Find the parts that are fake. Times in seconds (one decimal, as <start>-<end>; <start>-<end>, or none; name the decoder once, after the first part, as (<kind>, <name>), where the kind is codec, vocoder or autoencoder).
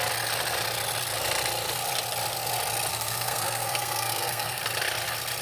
2.9-4.6 (codec, SNAC)